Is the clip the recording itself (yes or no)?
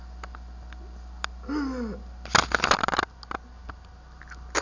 yes